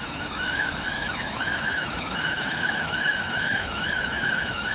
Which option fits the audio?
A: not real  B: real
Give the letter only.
A